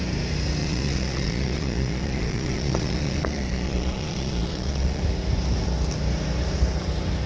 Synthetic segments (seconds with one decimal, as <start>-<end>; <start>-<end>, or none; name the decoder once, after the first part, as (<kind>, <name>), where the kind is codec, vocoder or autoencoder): 0.6-5.0 (vocoder, Vocos)